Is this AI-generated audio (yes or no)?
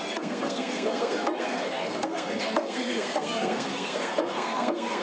yes